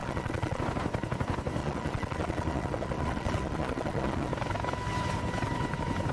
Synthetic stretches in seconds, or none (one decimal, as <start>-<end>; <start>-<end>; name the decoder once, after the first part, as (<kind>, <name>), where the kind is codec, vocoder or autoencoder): 0.0-0.6 (vocoder, Vocos); 1.6-4.3